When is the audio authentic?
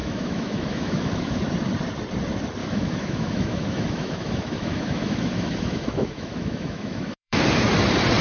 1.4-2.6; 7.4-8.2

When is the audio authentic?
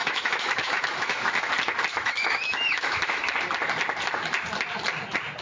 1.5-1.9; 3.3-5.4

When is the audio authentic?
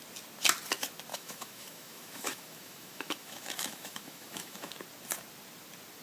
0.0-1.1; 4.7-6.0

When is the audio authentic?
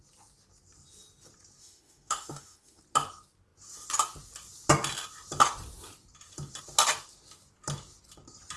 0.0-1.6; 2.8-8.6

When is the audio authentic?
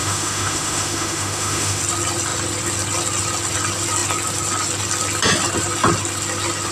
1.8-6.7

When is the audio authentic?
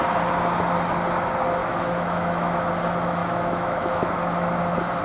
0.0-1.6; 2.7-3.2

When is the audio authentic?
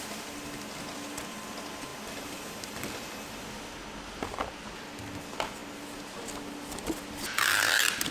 0.0-8.1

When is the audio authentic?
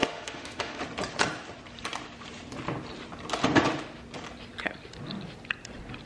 0.8-6.1